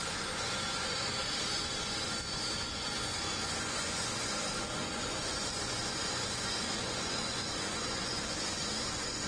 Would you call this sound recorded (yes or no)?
no